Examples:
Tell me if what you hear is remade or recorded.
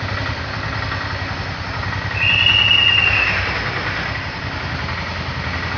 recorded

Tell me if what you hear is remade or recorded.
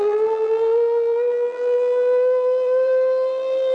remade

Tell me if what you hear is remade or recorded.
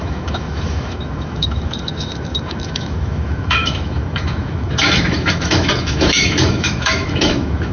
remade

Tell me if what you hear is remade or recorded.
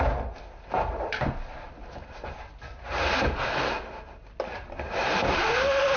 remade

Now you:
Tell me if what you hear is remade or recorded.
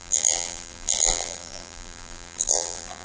remade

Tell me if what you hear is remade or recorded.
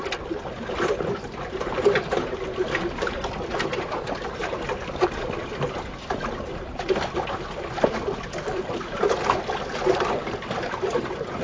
recorded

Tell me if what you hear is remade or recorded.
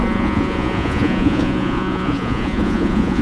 remade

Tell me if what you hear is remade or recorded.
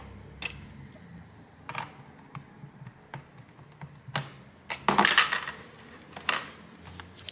recorded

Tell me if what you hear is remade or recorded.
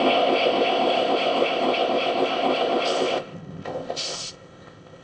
remade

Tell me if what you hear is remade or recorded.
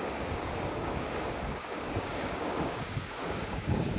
remade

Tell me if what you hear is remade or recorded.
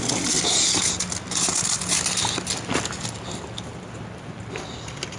recorded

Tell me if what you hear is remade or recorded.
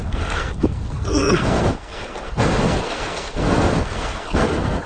remade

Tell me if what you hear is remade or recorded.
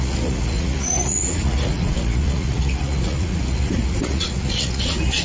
remade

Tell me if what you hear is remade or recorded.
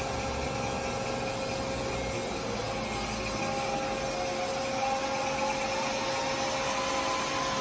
recorded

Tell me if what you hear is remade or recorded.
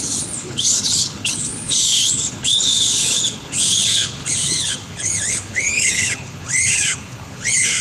remade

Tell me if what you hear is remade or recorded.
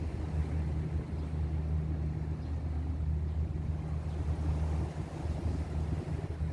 recorded